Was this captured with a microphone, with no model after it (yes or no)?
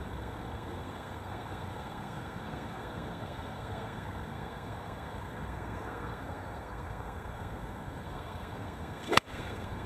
no